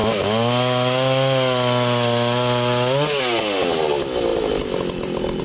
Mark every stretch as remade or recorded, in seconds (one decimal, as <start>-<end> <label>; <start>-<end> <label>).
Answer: 0.0-5.4 recorded